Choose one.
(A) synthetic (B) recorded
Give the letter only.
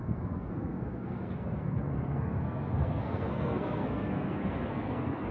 A